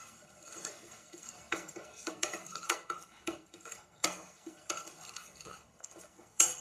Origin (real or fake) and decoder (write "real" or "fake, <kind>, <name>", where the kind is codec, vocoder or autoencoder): fake, codec, SNAC